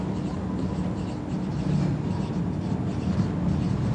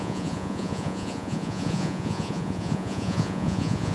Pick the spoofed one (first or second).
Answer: second